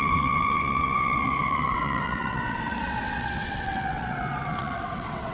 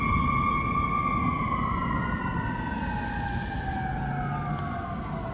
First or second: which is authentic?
second